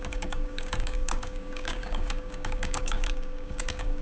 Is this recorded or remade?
remade